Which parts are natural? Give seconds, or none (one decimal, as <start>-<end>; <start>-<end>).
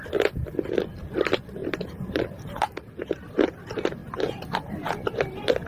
0.0-1.6; 2.9-5.7